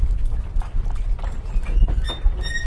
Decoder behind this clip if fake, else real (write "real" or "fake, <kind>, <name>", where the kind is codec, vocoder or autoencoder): real